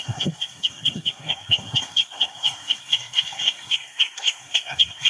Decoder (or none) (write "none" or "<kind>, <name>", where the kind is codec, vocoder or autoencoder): codec, SNAC